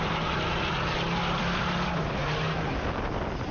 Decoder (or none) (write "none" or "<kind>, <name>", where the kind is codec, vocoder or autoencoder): none